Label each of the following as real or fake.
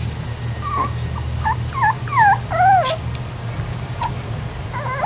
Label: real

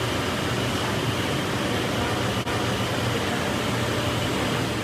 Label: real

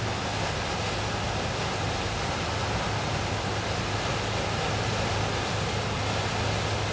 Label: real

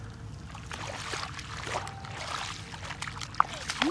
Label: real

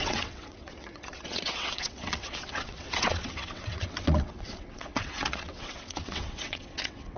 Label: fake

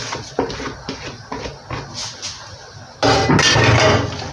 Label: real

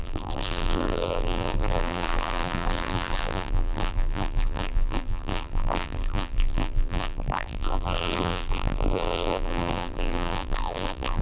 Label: fake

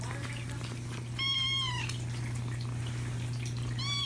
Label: real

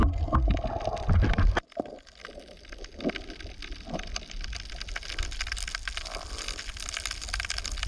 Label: real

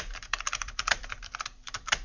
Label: fake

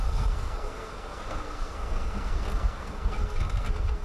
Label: fake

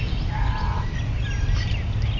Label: real